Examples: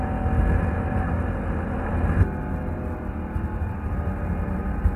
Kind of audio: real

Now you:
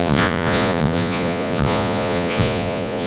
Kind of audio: fake